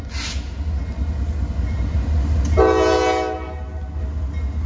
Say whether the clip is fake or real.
real